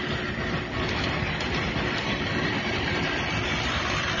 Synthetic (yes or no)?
no